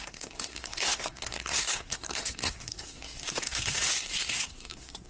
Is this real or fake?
fake